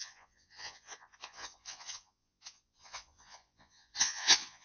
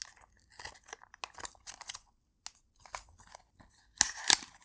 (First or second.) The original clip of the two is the second